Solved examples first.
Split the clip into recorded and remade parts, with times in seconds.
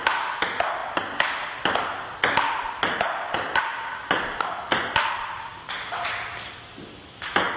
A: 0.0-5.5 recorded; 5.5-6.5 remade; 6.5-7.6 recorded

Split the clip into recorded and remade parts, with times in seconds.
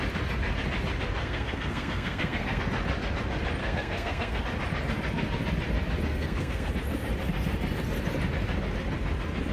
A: 0.0-1.2 recorded; 1.2-2.6 remade; 2.6-3.6 recorded; 3.6-4.4 remade; 4.4-6.1 recorded; 6.1-6.7 remade; 6.7-9.5 recorded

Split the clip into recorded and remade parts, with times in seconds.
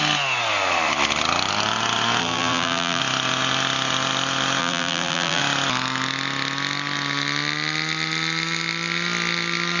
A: 0.0-2.2 recorded; 2.2-3.0 remade; 3.0-4.6 recorded; 4.6-5.4 remade; 5.4-9.8 recorded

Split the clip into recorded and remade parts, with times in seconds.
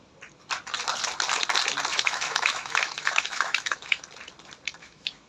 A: 0.0-1.9 recorded; 1.9-4.0 remade; 4.0-4.8 recorded; 4.8-5.3 remade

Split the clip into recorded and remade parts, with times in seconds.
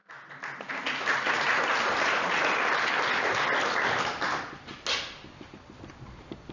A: 0.0-6.5 recorded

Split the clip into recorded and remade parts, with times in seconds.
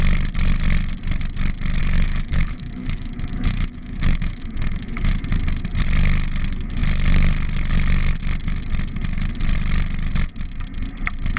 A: 0.0-1.8 recorded; 1.8-5.1 remade; 5.1-11.4 recorded